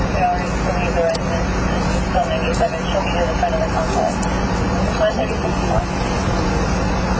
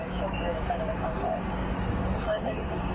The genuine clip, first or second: first